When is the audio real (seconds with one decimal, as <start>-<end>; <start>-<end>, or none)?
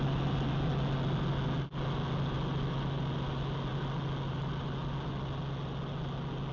0.0-6.5